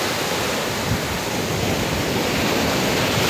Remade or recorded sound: recorded